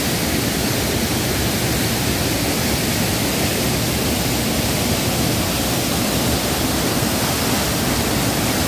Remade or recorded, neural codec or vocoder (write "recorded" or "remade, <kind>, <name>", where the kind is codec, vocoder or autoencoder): recorded